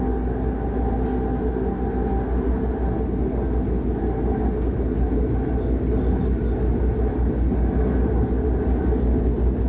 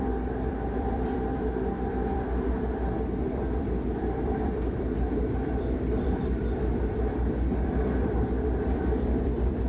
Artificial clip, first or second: second